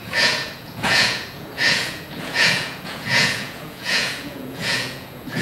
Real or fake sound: fake